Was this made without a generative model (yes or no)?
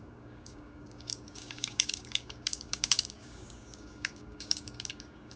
no